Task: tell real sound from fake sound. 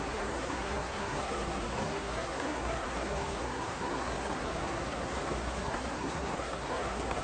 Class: fake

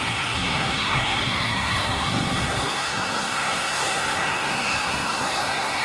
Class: fake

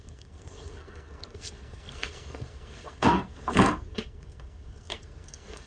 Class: fake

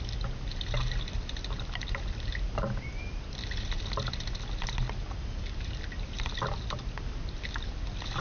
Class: real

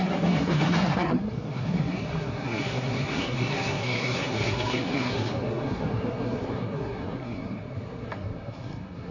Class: fake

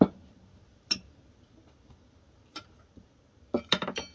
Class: real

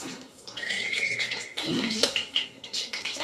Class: fake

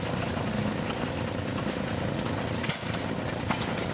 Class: real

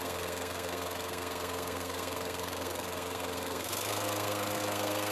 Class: fake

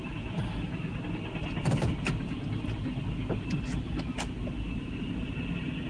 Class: real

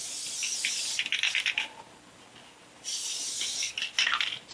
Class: real